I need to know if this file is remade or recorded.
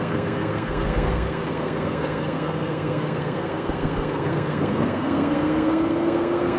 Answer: remade